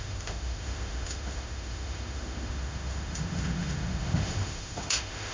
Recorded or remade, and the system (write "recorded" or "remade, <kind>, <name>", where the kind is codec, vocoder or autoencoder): remade, autoencoder, DAC-VAE